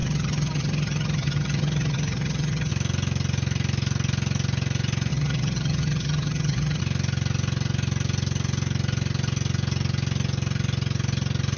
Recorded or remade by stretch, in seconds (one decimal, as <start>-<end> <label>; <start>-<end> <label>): 0.0-2.7 remade; 2.7-5.1 recorded; 5.1-6.8 remade; 6.8-11.6 recorded